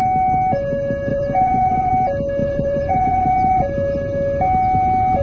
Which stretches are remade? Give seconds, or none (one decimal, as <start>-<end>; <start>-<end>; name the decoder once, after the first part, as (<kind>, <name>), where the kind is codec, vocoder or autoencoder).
1.1-1.9 (vocoder, Vocos); 2.4-3.6